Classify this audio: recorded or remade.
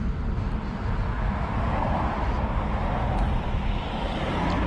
recorded